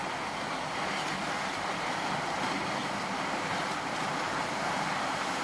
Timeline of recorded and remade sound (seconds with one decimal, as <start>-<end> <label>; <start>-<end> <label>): 0.0-5.4 recorded